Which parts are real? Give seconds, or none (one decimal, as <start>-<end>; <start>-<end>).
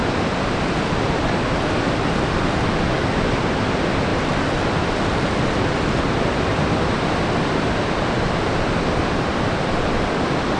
0.6-4.1; 9.2-10.6